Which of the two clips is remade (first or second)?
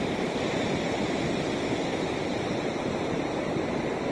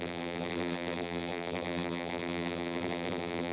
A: second